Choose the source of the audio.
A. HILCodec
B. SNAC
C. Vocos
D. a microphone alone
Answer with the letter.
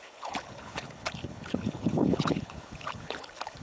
A